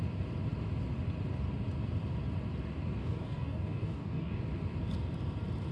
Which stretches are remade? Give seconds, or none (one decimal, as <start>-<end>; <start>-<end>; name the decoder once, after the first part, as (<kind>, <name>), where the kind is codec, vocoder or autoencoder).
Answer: 3.0-4.4 (codec, DAC)